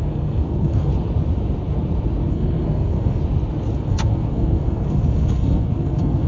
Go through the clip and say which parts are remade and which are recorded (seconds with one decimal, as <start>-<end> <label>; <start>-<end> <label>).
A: 0.0-0.9 remade; 0.9-2.3 recorded; 2.3-3.2 remade; 3.2-3.9 recorded; 3.9-6.3 remade